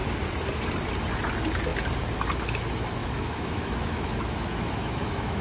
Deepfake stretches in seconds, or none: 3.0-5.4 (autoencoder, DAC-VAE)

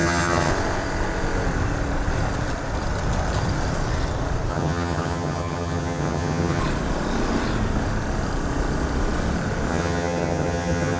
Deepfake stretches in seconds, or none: 0.0-0.5 (vocoder, HiFi-GAN); 4.5-6.6; 9.7-11.0

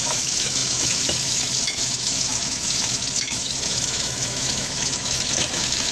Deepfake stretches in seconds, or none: 0.0-5.9 (autoencoder, DAC-VAE)

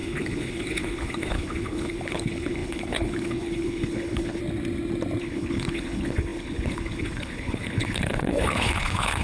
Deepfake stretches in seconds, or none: 0.0-4.4 (codec, HILCodec); 5.2-9.2

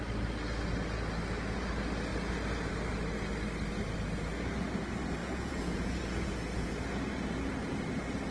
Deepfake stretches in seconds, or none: 5.2-6.7 (vocoder, Vocos)

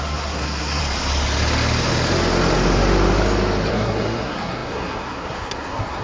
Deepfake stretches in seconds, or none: 0.0-0.8 (codec, SNAC); 3.7-6.0

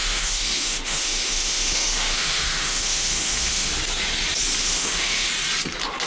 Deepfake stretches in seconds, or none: 0.0-3.7 (autoencoder, DAC-VAE); 4.6-5.3